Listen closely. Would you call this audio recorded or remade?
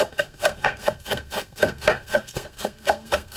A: remade